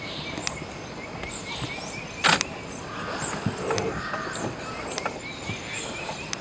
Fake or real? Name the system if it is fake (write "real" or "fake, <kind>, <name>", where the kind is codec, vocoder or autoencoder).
real